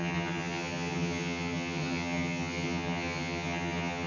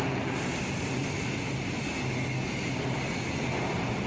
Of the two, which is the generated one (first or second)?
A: first